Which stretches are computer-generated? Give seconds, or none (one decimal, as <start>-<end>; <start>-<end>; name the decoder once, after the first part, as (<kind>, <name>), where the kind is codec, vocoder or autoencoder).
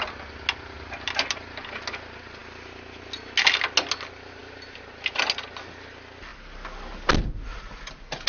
none